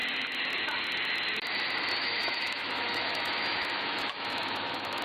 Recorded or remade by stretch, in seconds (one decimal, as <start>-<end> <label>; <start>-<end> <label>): 0.0-2.0 recorded; 2.0-5.0 remade